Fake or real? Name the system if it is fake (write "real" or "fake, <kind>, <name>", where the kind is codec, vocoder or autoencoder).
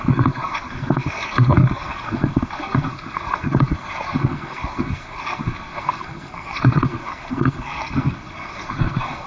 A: fake, codec, SNAC